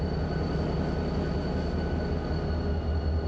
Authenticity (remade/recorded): recorded